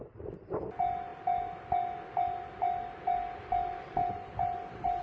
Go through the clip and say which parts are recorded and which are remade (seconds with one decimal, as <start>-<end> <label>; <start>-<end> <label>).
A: 0.0-5.0 recorded